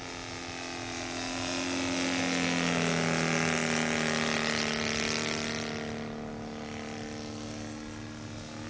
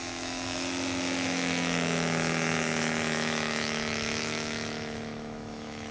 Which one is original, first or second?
first